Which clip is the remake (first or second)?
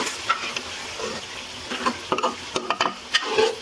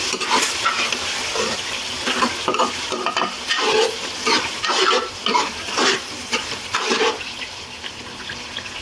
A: second